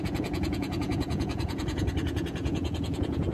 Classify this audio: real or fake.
fake